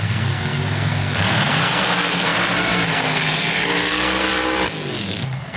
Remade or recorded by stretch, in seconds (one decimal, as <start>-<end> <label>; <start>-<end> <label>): 0.0-4.3 remade; 4.3-5.0 recorded; 5.0-5.6 remade